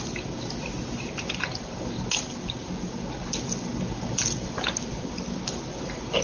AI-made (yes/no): no